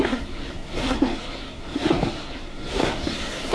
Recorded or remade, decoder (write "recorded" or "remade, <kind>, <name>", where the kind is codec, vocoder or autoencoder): remade, codec, SNAC